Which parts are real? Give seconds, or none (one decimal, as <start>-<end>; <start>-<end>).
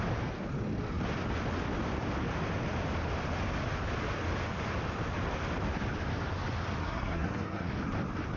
0.0-6.8; 7.7-8.4